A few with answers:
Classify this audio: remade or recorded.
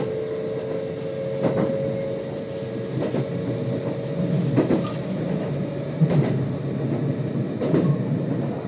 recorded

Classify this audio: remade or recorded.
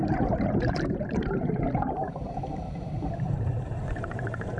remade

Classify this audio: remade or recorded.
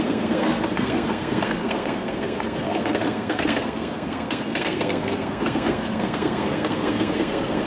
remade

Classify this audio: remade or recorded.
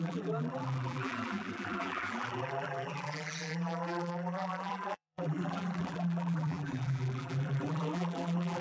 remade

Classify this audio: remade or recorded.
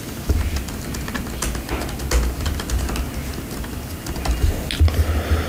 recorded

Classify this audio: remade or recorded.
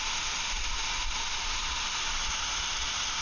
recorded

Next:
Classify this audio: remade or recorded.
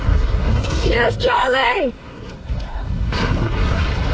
remade